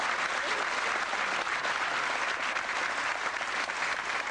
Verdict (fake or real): real